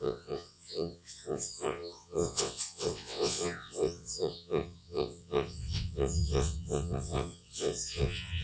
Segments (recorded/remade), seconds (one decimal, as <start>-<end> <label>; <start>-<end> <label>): 0.0-8.4 remade